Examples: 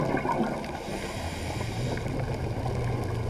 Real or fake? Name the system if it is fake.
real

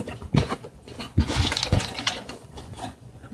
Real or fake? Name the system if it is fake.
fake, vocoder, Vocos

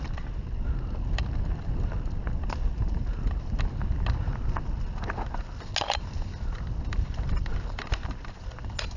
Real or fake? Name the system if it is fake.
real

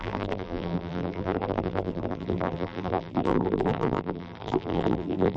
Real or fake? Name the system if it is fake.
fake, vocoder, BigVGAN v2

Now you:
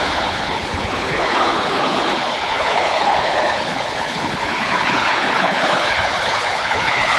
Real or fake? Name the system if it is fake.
fake, codec, HILCodec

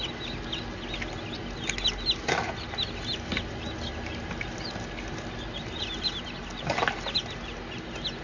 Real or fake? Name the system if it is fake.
real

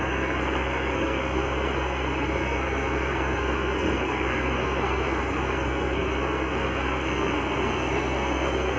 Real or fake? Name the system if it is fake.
fake, codec, SNAC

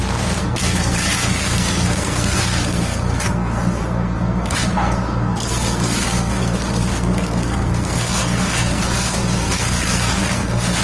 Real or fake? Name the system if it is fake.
fake, codec, SNAC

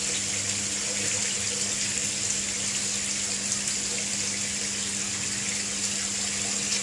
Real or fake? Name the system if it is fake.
real